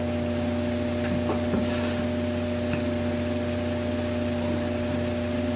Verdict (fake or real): real